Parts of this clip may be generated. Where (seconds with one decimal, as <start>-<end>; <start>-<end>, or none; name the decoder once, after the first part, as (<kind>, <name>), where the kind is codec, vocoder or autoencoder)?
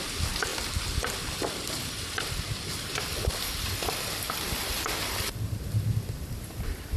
0.5-4.1 (vocoder, BigVGAN v2)